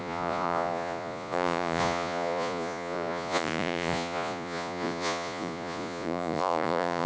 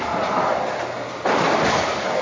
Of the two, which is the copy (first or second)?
first